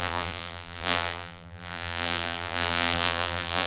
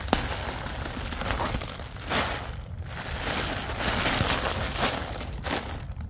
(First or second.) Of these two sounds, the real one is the second